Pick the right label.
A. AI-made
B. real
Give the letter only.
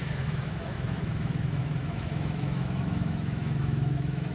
A